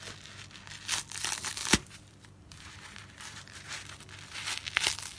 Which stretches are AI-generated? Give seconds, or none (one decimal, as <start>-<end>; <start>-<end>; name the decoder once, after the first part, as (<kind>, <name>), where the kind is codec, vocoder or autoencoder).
1.6-4.0 (vocoder, BigVGAN v2)